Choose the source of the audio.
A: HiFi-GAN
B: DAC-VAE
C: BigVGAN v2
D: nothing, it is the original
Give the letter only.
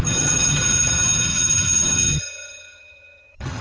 A